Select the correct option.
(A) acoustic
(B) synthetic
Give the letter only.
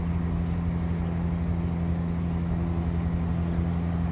A